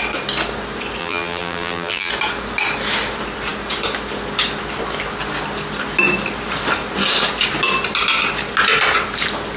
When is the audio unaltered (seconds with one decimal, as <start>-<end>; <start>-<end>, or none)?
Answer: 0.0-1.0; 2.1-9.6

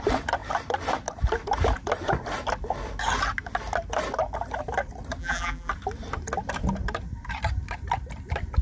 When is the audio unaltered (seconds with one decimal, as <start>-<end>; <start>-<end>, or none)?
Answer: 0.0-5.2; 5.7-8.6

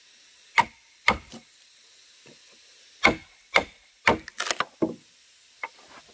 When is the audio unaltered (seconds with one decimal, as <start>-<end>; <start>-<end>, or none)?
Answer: 0.0-6.1

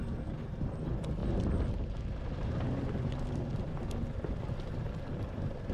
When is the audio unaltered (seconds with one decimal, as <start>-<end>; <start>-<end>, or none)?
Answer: 0.0-0.7; 1.2-4.6

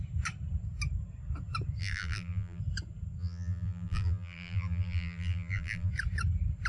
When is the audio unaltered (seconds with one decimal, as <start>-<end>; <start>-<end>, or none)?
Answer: 0.0-1.8; 2.6-3.2; 5.9-6.7